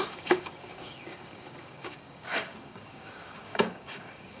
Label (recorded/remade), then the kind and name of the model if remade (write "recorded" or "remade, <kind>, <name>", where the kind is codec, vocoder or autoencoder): remade, codec, DAC